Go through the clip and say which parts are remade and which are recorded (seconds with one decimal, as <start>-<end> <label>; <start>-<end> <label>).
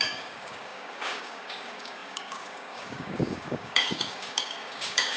0.0-5.2 remade